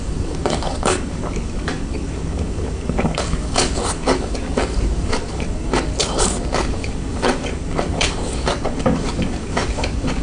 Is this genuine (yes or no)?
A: no